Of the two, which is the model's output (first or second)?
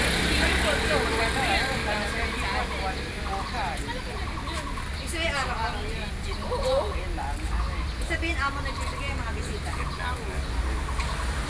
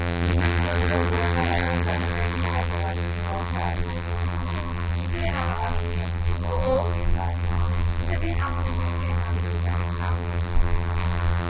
second